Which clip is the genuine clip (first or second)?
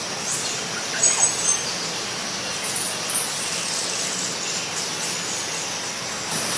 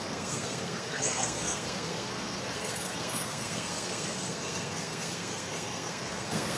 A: first